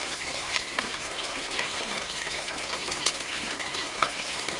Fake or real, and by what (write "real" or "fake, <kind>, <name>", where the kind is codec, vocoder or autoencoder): fake, codec, SNAC